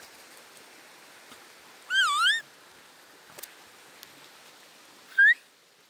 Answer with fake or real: real